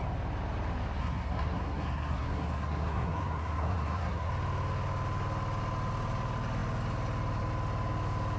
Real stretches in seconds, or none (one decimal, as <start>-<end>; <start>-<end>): 0.0-1.0; 4.3-8.4